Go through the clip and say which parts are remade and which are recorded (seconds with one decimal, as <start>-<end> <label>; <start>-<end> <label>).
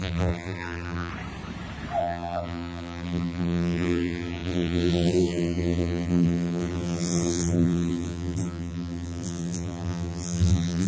0.0-1.1 remade; 1.1-2.0 recorded; 2.0-10.9 remade